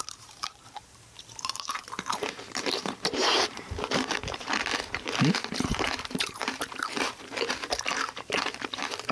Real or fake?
fake